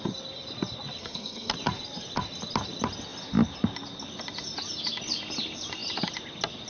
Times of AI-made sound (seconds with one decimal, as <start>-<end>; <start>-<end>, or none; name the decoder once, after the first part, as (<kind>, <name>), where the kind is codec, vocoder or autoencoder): 1.0-1.5 (codec, SNAC)